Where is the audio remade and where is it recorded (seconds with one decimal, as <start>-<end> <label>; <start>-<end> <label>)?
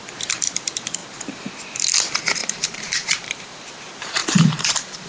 0.0-2.4 recorded; 2.4-3.5 remade; 3.5-4.2 recorded; 4.2-5.1 remade